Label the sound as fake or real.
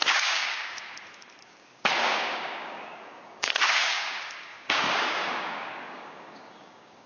fake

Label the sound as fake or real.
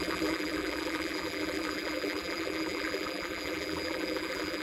fake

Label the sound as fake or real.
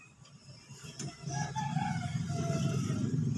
fake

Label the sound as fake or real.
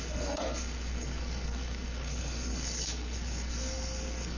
fake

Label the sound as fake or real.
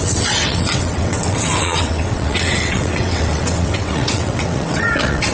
fake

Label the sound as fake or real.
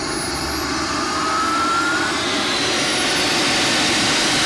real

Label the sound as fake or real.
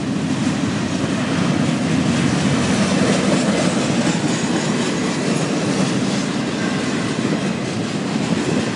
real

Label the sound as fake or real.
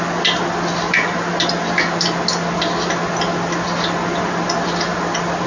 real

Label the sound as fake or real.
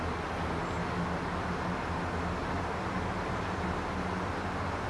real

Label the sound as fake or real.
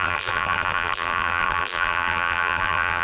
fake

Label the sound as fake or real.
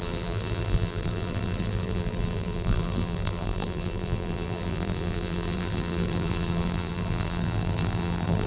fake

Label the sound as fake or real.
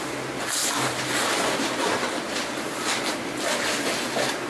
real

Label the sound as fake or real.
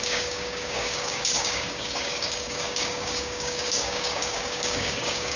fake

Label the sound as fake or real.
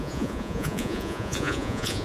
fake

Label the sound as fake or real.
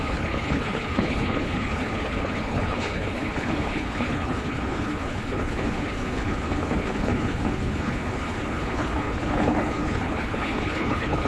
fake